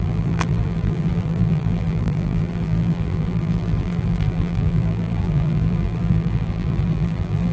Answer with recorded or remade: remade